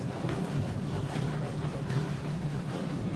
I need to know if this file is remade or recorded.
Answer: remade